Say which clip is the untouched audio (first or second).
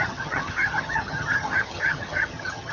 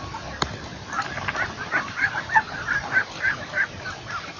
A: second